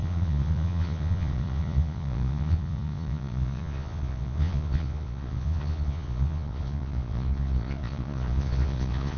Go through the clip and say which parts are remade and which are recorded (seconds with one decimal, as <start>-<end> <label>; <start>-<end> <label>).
0.0-9.2 remade